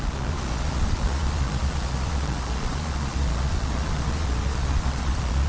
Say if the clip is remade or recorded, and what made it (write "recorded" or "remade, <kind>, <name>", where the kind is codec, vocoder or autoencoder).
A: remade, vocoder, Vocos